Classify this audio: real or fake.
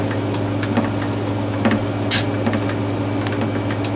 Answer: real